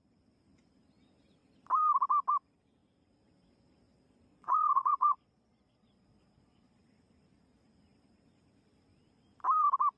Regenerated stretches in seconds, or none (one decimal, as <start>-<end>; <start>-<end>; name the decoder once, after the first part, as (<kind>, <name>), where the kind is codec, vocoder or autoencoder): 4.3-6.8 (vocoder, Vocos)